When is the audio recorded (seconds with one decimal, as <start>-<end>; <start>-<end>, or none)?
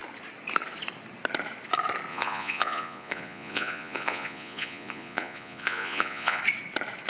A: 0.0-2.1; 6.4-7.1